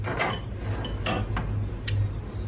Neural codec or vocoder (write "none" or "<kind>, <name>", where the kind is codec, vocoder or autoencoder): none